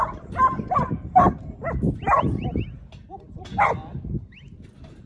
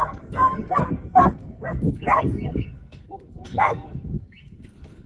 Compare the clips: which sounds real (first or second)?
first